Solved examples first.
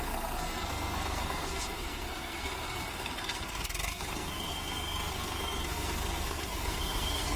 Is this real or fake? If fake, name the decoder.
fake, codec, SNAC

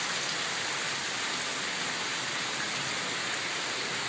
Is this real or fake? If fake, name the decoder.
real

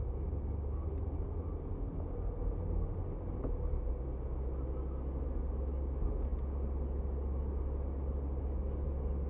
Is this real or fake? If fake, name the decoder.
real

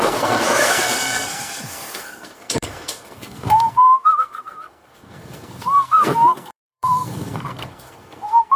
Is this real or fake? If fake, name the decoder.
fake, codec, SNAC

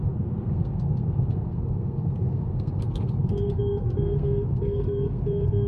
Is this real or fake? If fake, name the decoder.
fake, codec, SNAC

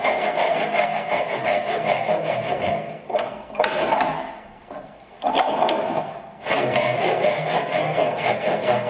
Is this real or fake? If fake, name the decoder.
fake, codec, SNAC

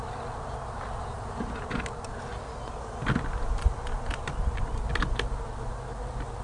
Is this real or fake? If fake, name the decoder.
real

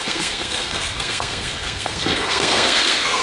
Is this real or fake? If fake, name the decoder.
fake, codec, SNAC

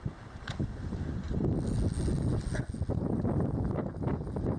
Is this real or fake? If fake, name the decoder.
real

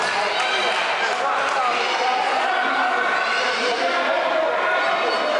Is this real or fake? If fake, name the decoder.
real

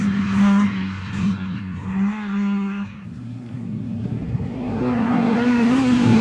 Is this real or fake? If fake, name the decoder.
fake, codec, SNAC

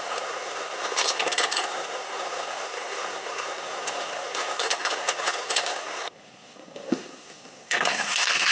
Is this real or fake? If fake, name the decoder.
fake, codec, SNAC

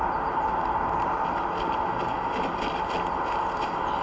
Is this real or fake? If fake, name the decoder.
real